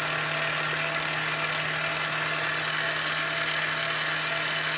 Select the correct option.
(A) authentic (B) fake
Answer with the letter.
A